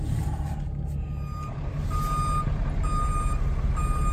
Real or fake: real